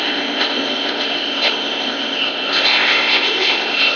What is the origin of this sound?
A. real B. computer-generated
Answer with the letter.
B